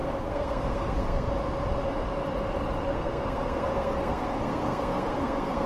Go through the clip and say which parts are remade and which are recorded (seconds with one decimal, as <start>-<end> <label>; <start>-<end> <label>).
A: 0.0-1.3 remade; 1.3-2.9 recorded; 2.9-5.7 remade